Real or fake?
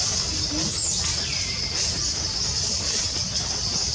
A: real